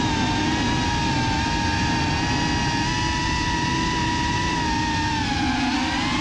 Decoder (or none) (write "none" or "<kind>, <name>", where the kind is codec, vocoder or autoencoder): none